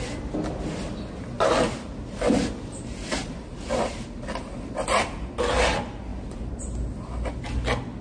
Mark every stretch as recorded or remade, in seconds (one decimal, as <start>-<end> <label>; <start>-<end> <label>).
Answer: 0.0-6.1 recorded; 6.1-6.8 remade; 6.8-8.0 recorded